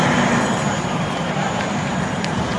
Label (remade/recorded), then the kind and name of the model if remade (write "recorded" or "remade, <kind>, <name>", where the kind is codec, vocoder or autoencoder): remade, vocoder, BigVGAN v2